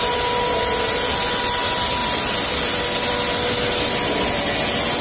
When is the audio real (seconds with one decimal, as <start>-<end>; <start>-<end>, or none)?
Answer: 0.0-5.0